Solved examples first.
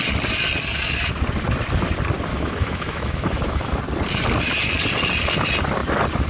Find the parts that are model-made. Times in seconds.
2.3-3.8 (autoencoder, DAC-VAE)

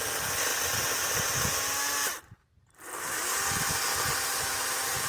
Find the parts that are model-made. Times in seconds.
none

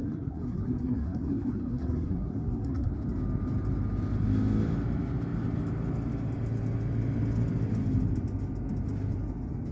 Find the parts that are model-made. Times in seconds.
0.0-2.9 (codec, SNAC)

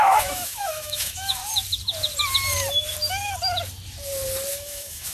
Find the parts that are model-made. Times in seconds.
0.0-1.4 (autoencoder, DAC-VAE); 4.5-5.1